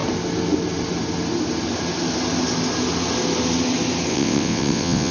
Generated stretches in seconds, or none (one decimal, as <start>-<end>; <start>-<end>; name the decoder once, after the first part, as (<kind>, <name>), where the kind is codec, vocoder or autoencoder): 4.1-5.1 (vocoder, WaveNeXt)